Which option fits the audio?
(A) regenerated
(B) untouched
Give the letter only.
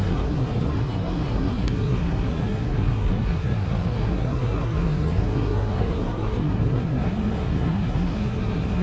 A